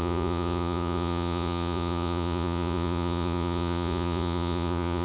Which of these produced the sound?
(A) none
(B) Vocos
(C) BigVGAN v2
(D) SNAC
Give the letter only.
B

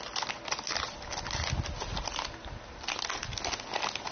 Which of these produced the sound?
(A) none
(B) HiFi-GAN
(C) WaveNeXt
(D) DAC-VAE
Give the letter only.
A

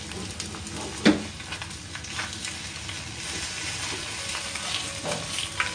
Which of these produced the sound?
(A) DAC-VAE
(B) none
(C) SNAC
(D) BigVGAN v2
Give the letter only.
B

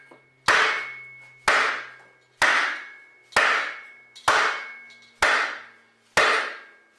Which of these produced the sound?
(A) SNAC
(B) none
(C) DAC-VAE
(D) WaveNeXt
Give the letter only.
B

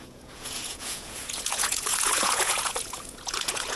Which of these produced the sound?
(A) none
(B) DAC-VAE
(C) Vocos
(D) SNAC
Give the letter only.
C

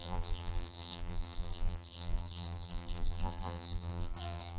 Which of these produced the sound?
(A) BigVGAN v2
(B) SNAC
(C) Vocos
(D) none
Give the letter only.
A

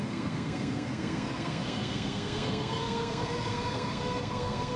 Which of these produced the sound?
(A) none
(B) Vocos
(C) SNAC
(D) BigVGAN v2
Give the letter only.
C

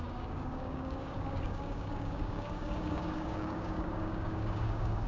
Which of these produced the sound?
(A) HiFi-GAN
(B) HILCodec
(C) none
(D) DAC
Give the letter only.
D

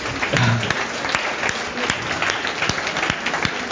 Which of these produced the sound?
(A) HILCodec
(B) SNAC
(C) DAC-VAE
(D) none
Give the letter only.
D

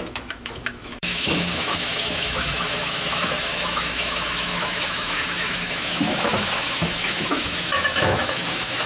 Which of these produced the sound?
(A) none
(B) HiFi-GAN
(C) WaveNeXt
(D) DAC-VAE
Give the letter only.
D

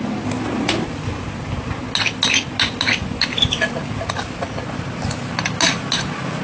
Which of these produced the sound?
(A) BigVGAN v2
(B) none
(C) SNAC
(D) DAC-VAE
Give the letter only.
B